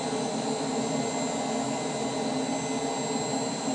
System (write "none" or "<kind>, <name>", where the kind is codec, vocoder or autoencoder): none